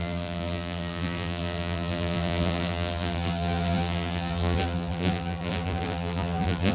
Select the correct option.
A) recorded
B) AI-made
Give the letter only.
B